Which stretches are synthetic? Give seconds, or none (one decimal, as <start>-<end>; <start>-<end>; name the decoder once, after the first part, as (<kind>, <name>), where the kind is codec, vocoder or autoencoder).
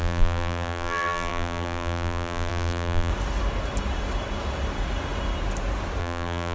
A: 0.0-3.1 (vocoder, BigVGAN v2); 6.0-6.5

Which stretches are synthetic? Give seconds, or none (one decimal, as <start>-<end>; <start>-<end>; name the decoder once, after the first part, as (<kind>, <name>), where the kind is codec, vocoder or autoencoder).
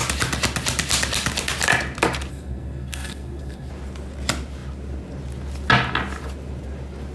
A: 2.3-3.7 (codec, SNAC)